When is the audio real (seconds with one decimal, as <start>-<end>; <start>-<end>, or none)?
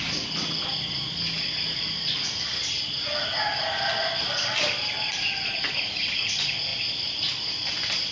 0.0-3.5; 4.9-6.7